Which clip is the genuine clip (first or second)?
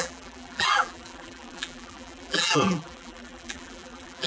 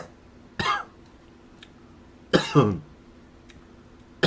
second